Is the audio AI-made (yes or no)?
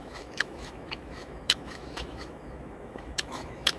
yes